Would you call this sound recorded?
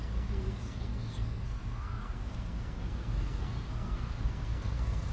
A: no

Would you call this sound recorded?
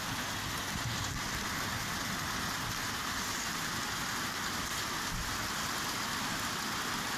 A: yes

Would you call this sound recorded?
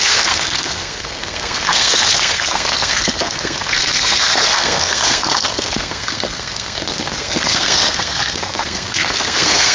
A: no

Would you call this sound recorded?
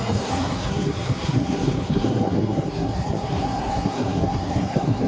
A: no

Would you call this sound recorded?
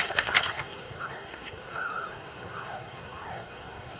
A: no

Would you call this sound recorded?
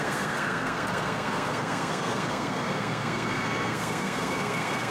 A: no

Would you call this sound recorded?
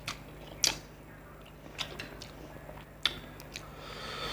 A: yes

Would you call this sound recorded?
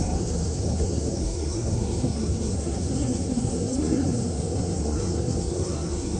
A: no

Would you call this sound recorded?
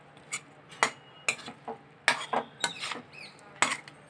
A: yes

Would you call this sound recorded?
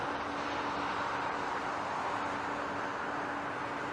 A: yes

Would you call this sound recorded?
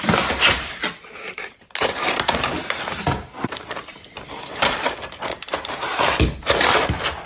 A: yes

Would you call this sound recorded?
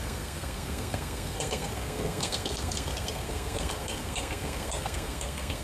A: no